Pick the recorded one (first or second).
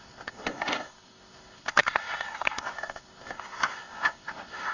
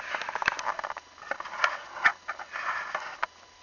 second